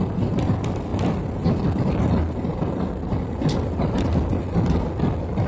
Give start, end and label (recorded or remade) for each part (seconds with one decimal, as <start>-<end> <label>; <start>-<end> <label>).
0.0-5.5 recorded